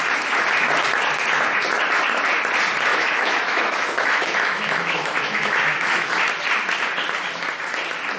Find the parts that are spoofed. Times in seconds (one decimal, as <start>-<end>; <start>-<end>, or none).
2.9-6.1

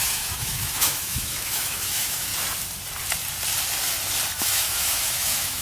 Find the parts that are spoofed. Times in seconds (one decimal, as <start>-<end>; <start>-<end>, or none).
0.0-2.3; 4.4-5.6

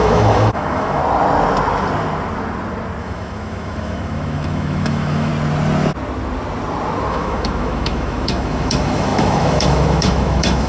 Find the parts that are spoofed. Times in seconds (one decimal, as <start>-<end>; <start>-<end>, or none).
0.0-1.0; 3.0-5.3; 7.1-10.7

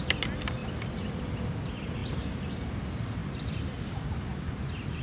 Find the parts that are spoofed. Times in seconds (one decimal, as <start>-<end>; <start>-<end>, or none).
none